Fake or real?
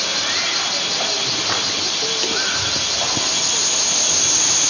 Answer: real